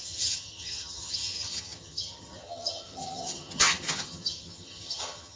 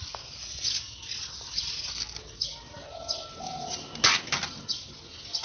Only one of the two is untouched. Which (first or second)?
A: second